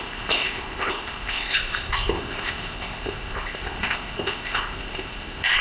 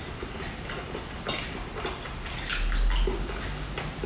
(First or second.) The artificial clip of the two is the first